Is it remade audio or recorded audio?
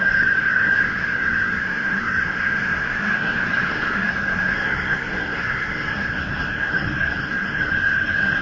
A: remade